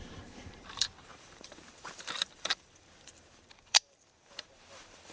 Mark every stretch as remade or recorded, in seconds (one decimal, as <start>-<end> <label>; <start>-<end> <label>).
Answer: 0.0-5.1 remade